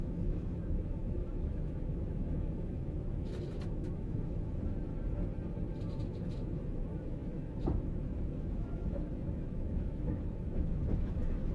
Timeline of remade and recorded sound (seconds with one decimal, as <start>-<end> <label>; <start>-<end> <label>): 0.0-4.9 remade; 4.9-5.9 recorded; 5.9-11.5 remade